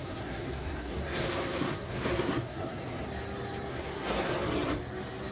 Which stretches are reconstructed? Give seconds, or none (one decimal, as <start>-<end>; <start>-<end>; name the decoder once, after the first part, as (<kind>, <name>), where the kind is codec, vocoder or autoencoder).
0.0-3.1 (codec, SNAC); 3.7-4.3